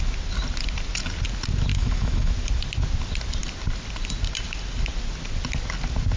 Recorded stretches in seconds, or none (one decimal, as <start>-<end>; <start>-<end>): 0.0-1.7; 2.3-6.2